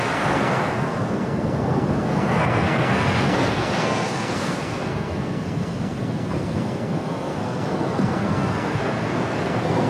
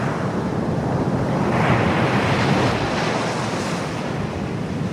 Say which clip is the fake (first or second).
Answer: first